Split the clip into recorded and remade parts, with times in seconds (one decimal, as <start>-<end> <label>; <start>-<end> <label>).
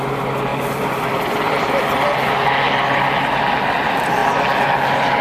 0.0-0.5 remade; 0.5-3.6 recorded; 3.6-4.2 remade; 4.2-5.2 recorded